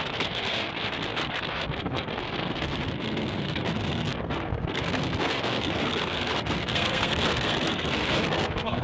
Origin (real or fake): fake